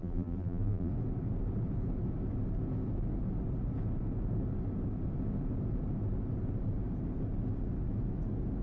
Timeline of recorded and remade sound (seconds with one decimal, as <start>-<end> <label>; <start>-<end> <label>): 0.0-0.9 remade; 0.9-8.6 recorded